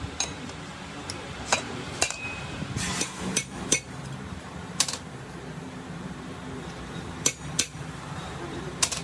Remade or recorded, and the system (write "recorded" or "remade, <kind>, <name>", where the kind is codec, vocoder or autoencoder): remade, vocoder, BigVGAN v2